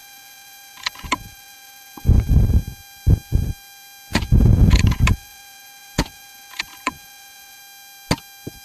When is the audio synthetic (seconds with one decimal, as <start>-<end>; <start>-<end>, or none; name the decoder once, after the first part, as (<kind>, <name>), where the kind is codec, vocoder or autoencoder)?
0.0-2.4 (vocoder, Vocos); 4.1-7.6